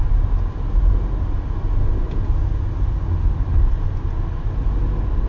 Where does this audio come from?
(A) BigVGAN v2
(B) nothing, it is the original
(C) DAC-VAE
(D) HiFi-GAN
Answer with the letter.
B